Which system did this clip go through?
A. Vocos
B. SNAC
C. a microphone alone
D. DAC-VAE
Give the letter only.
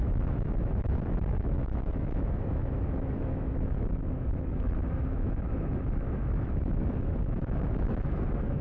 D